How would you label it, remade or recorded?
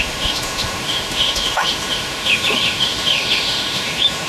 remade